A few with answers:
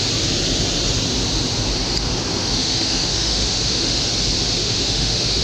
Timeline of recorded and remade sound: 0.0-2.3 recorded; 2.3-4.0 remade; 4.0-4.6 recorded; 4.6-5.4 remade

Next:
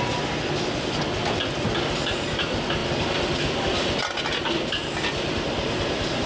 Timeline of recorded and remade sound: 0.0-6.3 recorded

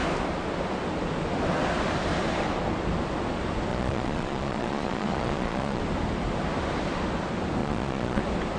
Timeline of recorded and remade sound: 0.0-3.7 recorded; 3.7-5.8 remade; 5.8-7.6 recorded; 7.6-8.2 remade; 8.2-8.6 recorded

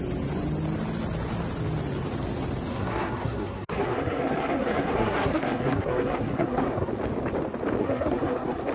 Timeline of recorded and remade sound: 0.0-2.7 recorded; 2.7-6.9 remade; 6.9-7.8 recorded; 7.8-8.7 remade